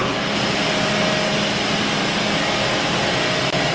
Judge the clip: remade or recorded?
recorded